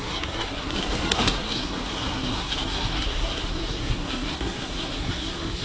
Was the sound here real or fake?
fake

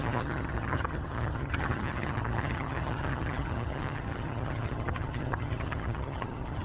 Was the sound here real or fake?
fake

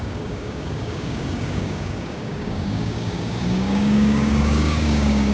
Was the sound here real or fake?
fake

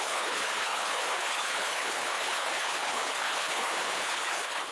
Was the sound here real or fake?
fake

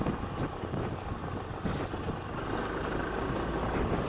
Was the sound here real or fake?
real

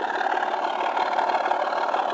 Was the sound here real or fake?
real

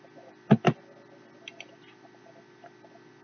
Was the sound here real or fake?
real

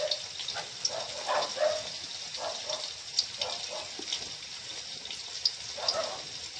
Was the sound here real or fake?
real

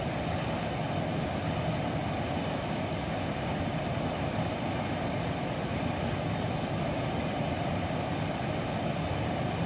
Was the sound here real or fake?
real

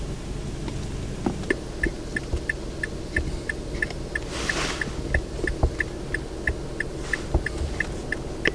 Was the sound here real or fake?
real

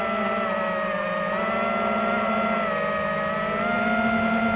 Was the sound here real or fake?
real